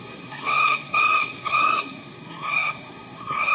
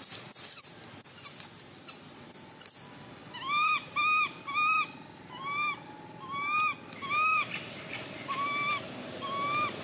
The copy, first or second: first